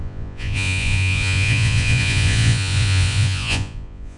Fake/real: fake